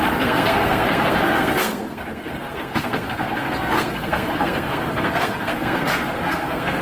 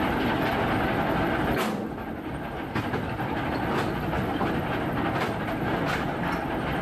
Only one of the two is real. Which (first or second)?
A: second